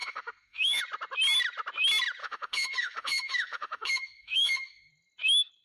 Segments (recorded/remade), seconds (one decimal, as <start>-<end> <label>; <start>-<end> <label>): 0.0-0.8 remade; 0.8-2.2 recorded; 2.2-4.9 remade; 4.9-5.6 recorded